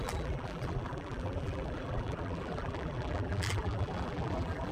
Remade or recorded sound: remade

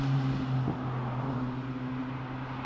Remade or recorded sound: recorded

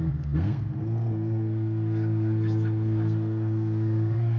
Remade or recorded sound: remade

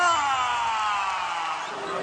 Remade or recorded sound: recorded